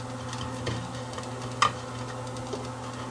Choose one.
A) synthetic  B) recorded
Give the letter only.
B